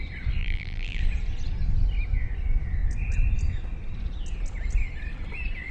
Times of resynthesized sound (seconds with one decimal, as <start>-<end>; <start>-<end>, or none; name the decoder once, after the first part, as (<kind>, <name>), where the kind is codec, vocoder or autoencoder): 0.4-1.0 (vocoder, BigVGAN v2)

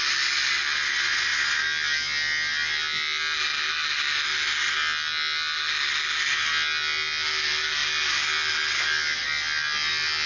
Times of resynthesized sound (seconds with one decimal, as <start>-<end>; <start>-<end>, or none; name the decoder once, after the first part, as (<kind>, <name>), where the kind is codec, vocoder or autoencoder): none